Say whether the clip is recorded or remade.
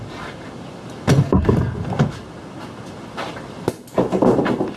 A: recorded